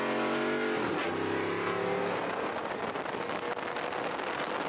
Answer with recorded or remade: recorded